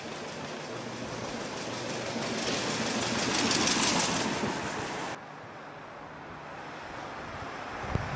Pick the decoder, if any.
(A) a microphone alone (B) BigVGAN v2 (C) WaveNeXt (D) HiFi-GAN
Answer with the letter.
A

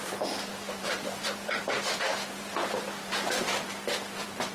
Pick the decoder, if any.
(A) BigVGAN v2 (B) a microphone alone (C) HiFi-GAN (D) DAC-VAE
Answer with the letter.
A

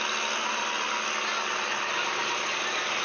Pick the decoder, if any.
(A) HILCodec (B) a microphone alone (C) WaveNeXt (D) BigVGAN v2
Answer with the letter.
B